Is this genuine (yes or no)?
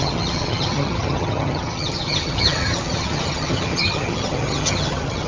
no